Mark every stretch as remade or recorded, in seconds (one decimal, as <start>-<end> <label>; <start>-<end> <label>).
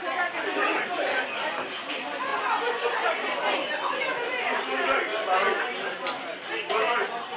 0.0-7.4 recorded